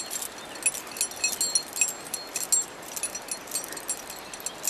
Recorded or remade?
recorded